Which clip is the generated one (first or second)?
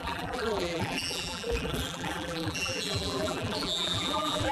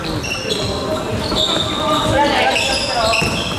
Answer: first